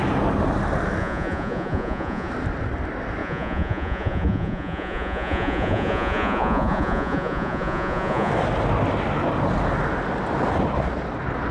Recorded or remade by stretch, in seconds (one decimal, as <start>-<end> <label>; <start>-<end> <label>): 0.0-1.0 recorded; 1.0-2.3 remade; 2.3-3.2 recorded; 3.2-8.3 remade; 8.3-11.5 recorded